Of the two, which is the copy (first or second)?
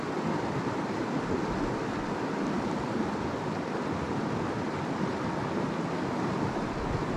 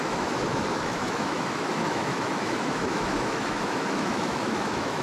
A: second